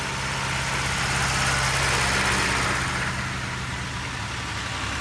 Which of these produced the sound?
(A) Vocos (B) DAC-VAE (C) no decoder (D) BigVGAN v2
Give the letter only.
C